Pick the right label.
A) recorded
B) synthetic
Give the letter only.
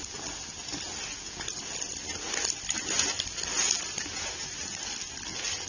A